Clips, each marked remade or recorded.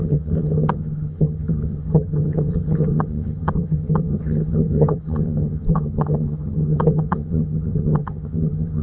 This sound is remade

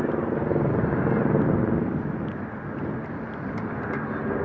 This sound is recorded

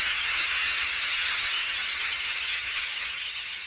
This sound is remade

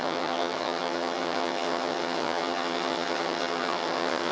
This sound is remade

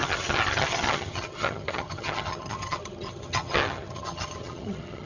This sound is remade